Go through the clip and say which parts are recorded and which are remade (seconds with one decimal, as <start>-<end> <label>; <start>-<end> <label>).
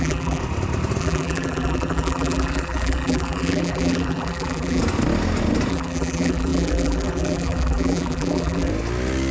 0.0-0.4 remade; 0.4-1.0 recorded; 1.0-4.8 remade; 4.8-5.7 recorded; 5.7-8.7 remade; 8.7-9.3 recorded